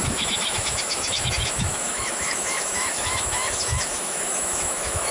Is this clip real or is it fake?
fake